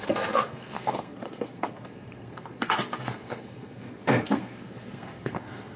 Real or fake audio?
fake